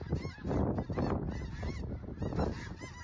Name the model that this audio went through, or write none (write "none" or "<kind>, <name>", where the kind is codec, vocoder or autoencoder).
none